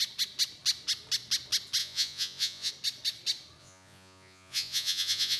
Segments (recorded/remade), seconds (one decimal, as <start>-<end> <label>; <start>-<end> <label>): 0.0-1.8 recorded; 1.8-2.7 remade; 2.7-3.6 recorded; 3.6-5.4 remade